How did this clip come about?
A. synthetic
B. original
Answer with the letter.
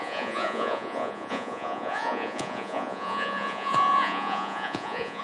A